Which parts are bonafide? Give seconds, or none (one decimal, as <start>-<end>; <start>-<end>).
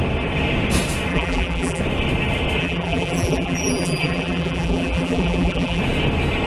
0.0-1.1; 1.8-2.6; 5.8-6.5